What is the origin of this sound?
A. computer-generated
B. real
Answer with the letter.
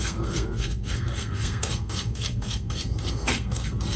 A